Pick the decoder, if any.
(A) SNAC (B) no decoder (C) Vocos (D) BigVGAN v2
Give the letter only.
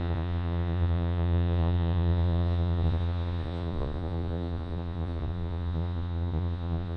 C